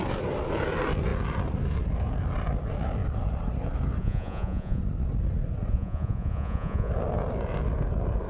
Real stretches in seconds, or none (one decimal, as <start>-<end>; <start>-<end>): 0.0-4.0; 4.8-5.7; 6.9-8.3